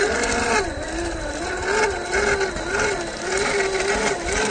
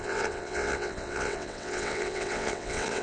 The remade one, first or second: second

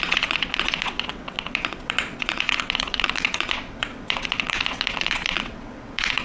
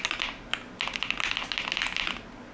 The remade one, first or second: first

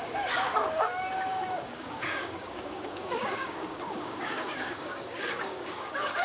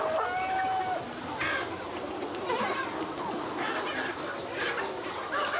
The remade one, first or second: first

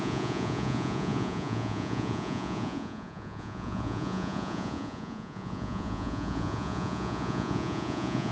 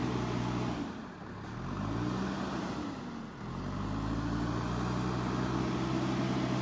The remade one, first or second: first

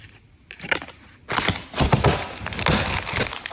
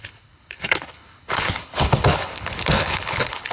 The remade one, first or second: second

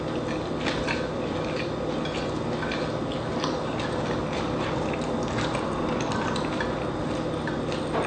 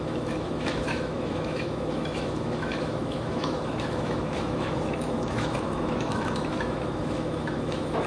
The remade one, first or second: second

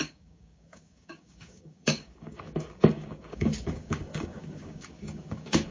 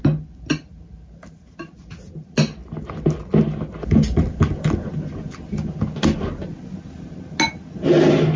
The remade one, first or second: first